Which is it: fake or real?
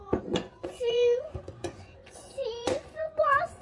fake